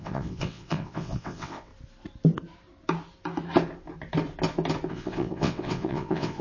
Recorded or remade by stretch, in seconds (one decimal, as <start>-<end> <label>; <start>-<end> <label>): 0.0-1.7 remade; 1.7-4.9 recorded; 4.9-6.4 remade